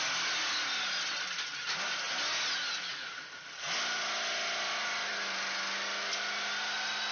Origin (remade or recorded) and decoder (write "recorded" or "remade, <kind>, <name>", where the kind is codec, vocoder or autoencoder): recorded